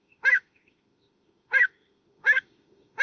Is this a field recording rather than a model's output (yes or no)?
no